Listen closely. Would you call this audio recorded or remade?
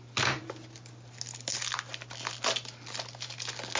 recorded